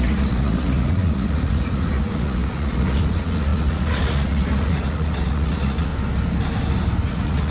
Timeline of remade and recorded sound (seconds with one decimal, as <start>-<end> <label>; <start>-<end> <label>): 0.0-5.9 remade; 5.9-7.1 recorded; 7.1-7.5 remade